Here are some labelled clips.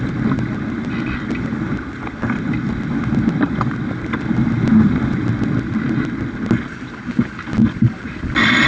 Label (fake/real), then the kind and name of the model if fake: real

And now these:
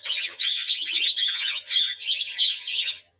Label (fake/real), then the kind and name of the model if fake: fake, vocoder, HiFi-GAN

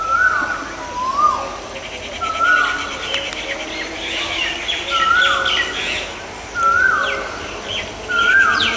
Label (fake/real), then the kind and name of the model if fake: real